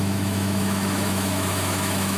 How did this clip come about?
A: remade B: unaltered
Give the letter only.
A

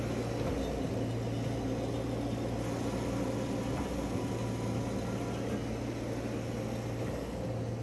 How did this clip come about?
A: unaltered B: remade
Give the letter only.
A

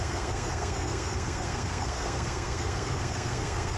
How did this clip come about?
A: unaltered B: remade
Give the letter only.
B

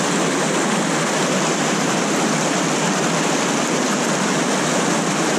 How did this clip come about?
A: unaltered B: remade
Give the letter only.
A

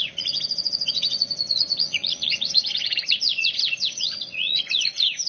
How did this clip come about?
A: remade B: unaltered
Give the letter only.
A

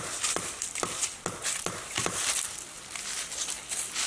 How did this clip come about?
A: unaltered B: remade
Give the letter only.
A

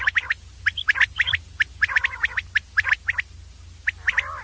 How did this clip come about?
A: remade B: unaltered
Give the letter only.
B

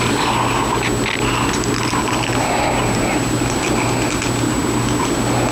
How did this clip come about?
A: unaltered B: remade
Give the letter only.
A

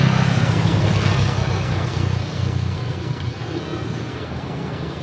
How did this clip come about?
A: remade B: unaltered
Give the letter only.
A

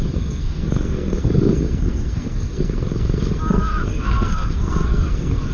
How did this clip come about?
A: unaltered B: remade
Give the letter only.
B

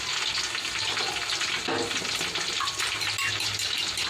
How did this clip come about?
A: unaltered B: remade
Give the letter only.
A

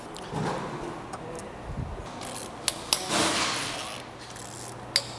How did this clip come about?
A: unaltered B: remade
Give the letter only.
A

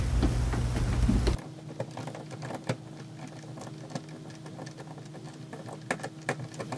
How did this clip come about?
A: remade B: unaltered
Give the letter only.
B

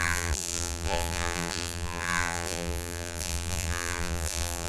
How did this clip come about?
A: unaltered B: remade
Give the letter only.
B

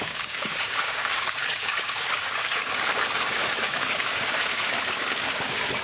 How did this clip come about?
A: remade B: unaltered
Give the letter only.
A